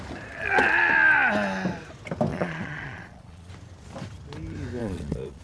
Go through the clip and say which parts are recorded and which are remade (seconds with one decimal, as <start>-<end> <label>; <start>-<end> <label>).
0.0-2.3 recorded; 2.3-3.5 remade; 3.5-4.8 recorded; 4.8-5.4 remade